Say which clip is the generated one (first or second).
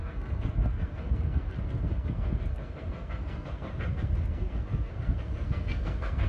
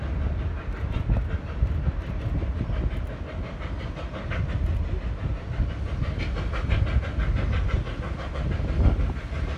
first